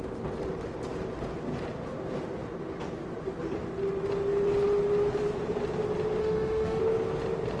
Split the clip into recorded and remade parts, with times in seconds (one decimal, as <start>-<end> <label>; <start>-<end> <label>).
0.0-6.2 recorded; 6.2-6.8 remade; 6.8-7.6 recorded